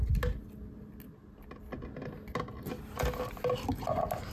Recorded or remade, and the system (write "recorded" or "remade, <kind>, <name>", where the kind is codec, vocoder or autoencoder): recorded